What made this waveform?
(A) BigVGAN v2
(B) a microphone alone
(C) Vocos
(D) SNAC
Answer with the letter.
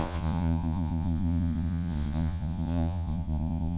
C